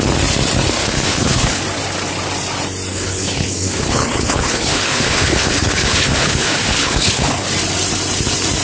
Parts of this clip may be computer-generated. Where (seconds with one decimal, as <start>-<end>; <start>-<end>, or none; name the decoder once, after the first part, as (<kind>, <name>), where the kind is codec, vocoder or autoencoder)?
0.8-1.6 (codec, HILCodec); 2.9-7.4